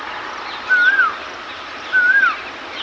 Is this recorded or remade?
recorded